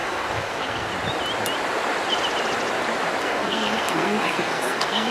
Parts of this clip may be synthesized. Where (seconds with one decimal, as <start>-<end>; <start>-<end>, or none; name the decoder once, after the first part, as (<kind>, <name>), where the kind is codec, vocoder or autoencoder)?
0.0-0.9 (codec, SNAC); 3.2-5.1